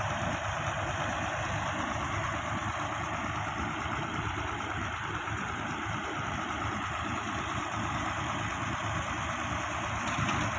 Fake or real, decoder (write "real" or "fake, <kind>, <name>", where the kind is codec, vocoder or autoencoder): real